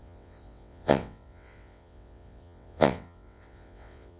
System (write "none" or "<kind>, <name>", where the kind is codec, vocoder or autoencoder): vocoder, WaveNeXt